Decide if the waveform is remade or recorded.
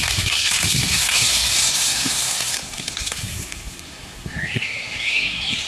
remade